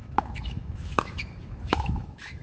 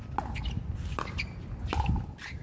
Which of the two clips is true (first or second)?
second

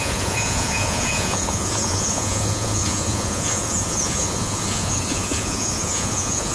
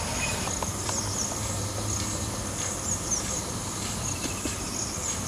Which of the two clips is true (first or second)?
second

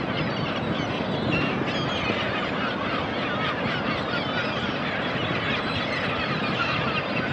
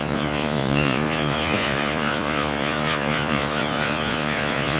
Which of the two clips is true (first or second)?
first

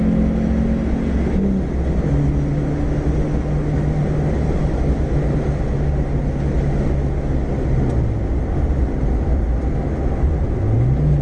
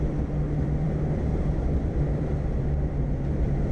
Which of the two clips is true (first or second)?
first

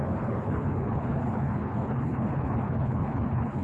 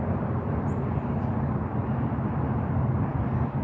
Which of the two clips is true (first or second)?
second